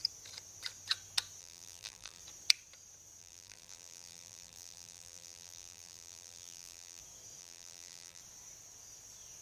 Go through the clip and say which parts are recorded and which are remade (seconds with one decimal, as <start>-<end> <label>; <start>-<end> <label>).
0.0-1.4 recorded; 1.4-2.2 remade; 2.2-3.2 recorded; 3.2-7.0 remade; 7.0-7.4 recorded; 7.4-8.2 remade; 8.2-9.4 recorded